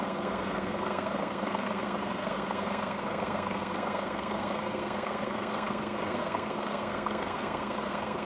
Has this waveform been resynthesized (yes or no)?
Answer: yes